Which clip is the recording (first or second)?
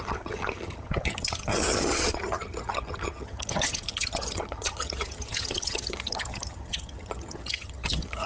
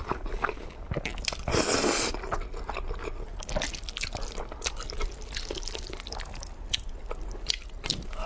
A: second